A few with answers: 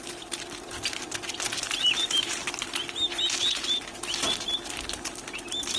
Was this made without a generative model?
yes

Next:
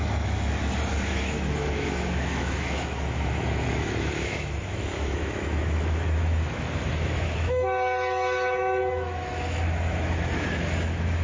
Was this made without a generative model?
no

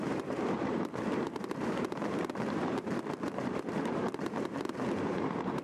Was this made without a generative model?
no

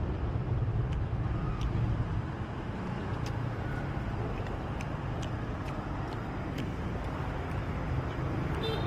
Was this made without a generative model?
yes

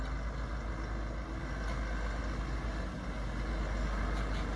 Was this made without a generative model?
yes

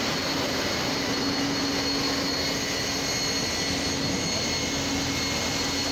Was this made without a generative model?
yes